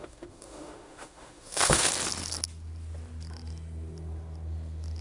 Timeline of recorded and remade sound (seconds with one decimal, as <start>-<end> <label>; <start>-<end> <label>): 0.0-1.9 remade; 1.9-5.0 recorded